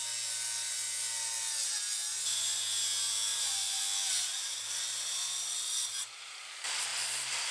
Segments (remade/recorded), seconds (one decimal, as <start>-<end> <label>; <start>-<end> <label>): 0.0-2.1 recorded; 2.1-2.6 remade; 2.6-3.3 recorded; 3.3-3.8 remade; 3.8-7.5 recorded